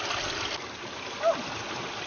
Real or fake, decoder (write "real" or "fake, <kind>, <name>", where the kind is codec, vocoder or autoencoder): real